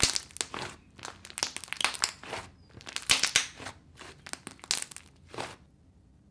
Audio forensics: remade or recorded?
recorded